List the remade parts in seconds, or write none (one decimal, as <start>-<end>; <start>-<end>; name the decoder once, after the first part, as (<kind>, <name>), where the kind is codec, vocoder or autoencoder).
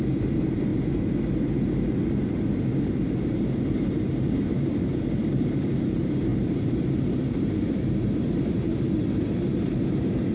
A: 0.0-0.7 (vocoder, BigVGAN v2); 2.9-8.7; 9.7-10.3